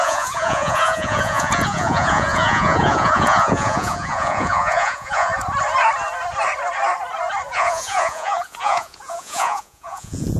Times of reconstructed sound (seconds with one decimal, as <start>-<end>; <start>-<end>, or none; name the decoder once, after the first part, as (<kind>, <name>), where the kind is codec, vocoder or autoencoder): 0.0-5.3 (vocoder, Vocos); 7.5-10.4